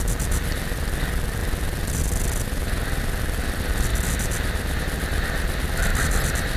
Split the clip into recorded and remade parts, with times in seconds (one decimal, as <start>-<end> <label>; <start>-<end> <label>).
0.0-6.6 recorded